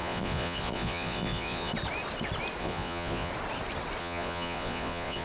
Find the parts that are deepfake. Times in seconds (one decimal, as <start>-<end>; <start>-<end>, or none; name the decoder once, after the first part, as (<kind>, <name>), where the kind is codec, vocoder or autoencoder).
0.0-1.7 (vocoder, Vocos); 2.6-3.3; 4.0-5.2

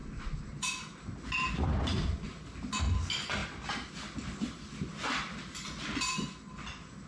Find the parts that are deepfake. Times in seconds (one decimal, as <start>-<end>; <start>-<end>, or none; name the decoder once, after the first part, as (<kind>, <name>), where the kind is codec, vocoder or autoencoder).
none

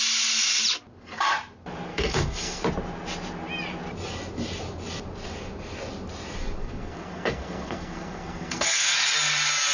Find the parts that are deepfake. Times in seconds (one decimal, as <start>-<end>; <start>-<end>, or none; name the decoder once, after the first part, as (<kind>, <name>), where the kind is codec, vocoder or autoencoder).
1.9-2.6 (codec, SNAC); 6.6-8.9